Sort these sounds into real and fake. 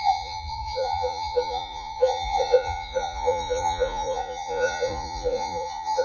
fake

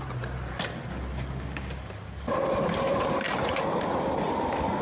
real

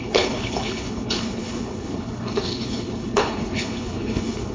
fake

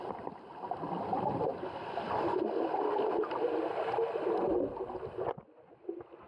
real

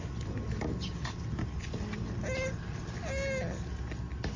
real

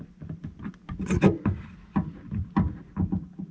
real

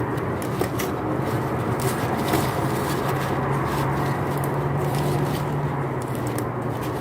real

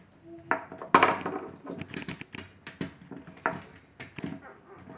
real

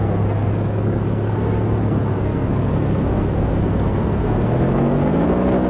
fake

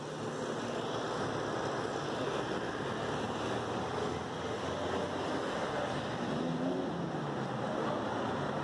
real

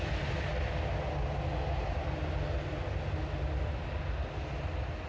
real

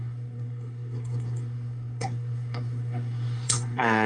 fake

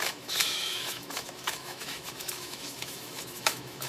fake